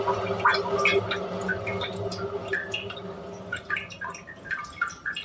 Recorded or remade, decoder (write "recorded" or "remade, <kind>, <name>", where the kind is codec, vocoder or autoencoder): recorded